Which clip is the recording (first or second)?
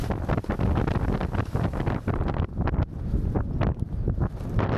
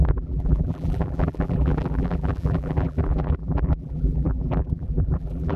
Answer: first